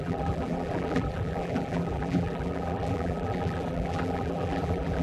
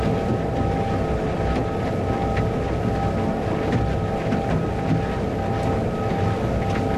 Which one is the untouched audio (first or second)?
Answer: second